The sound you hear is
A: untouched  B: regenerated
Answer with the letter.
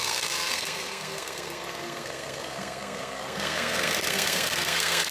B